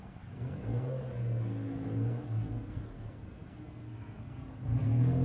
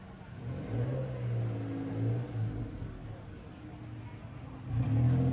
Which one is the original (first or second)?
second